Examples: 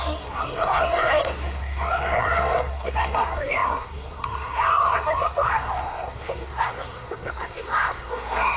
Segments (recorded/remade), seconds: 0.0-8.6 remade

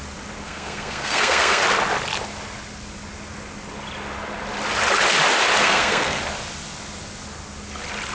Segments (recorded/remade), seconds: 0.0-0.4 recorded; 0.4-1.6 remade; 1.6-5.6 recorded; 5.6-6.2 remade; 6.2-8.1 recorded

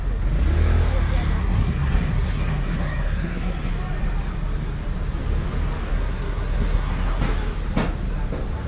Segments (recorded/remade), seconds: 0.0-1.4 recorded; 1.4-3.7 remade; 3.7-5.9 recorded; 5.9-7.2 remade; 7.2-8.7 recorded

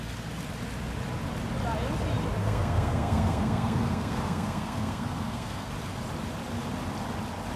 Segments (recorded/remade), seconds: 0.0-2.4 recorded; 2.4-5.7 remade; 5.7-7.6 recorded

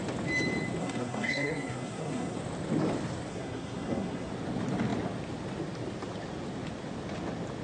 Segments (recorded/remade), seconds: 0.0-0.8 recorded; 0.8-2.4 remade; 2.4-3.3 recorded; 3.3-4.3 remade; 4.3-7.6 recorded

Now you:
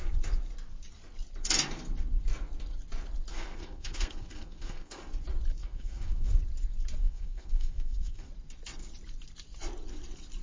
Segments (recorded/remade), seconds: 0.0-3.3 recorded; 3.3-5.0 remade; 5.0-5.6 recorded; 5.6-6.3 remade; 6.3-7.0 recorded; 7.0-8.3 remade; 8.3-10.4 recorded